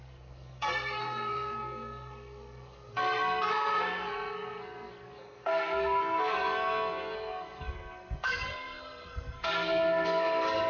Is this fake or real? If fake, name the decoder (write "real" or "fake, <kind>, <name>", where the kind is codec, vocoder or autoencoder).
fake, codec, SNAC